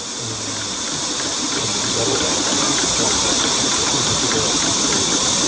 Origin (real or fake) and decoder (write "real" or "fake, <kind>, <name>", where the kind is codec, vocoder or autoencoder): real